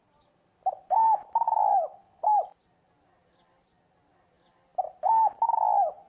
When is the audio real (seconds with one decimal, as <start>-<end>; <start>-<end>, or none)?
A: 0.0-6.1